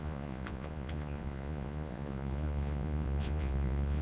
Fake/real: fake